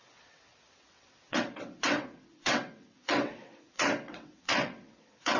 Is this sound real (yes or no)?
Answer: no